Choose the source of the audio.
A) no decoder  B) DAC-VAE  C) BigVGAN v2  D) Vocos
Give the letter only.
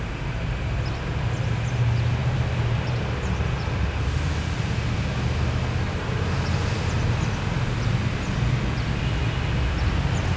A